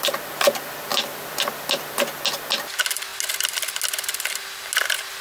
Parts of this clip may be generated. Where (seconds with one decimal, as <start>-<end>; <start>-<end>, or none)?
none